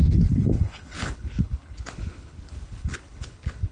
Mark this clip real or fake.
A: fake